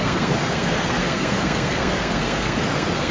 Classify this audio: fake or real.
fake